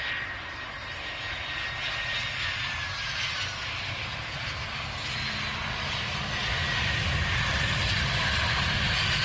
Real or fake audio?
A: real